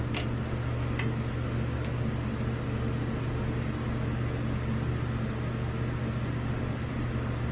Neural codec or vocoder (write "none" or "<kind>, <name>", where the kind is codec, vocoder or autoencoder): none